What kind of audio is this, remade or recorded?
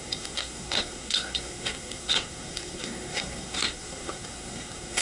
remade